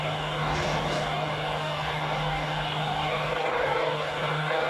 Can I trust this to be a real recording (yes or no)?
no